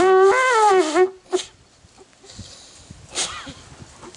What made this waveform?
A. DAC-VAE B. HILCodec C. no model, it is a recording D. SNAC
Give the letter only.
C